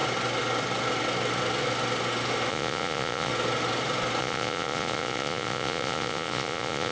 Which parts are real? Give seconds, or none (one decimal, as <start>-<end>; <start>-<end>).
0.0-2.5; 3.3-4.2